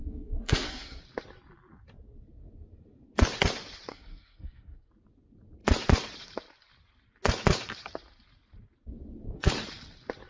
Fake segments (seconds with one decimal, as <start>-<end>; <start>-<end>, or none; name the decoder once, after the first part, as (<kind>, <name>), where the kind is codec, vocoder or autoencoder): 0.0-1.0 (codec, SNAC); 3.9-4.9